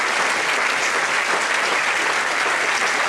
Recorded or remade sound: recorded